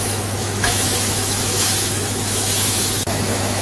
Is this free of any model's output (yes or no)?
no